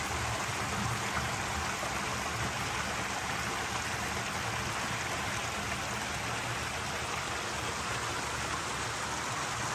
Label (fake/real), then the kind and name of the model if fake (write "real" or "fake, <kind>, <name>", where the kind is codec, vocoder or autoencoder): real